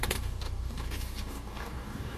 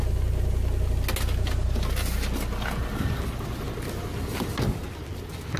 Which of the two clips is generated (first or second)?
first